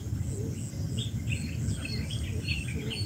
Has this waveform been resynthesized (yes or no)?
no